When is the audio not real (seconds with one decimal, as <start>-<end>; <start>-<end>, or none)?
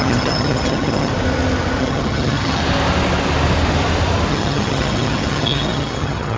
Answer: 0.0-1.1; 1.8-2.6; 4.3-6.4